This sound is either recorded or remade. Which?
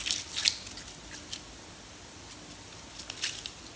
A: recorded